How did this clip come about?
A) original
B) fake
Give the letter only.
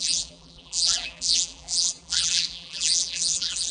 B